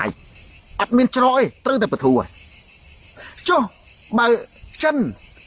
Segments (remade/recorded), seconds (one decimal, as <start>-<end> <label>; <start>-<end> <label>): 0.0-5.5 recorded